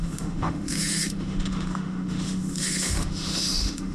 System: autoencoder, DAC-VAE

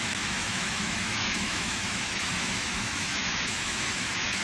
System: autoencoder, DAC-VAE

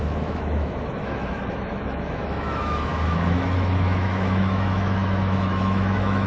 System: autoencoder, DAC-VAE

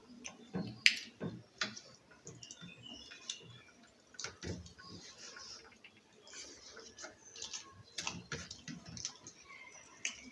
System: none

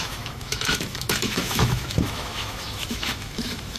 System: autoencoder, DAC-VAE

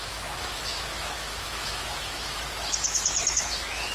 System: autoencoder, DAC-VAE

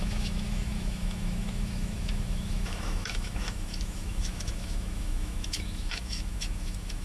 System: autoencoder, DAC-VAE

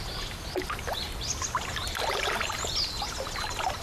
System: none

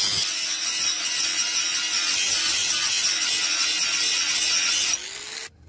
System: none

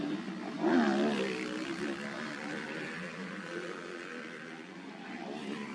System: none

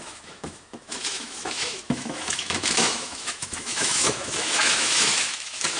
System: autoencoder, DAC-VAE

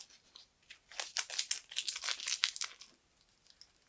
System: none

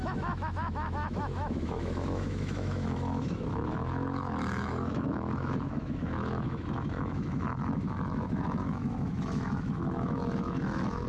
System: autoencoder, DAC-VAE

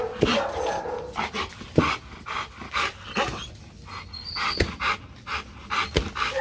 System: none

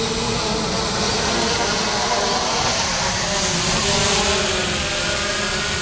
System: none